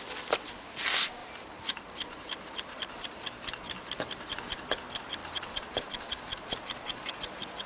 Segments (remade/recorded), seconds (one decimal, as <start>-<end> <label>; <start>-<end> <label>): 0.0-1.2 recorded; 1.2-4.1 remade; 4.1-5.2 recorded; 5.2-7.2 remade; 7.2-7.7 recorded